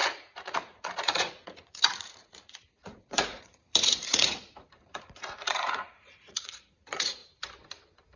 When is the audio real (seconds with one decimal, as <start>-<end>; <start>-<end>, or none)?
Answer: 7.2-8.2